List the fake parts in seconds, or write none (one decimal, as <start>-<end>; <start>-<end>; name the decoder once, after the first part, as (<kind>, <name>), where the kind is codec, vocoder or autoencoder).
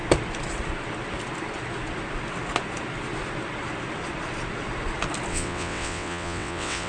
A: 5.3-6.9 (vocoder, WaveNeXt)